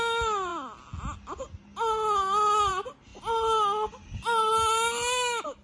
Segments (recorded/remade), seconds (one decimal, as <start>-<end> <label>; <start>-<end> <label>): 0.0-5.6 recorded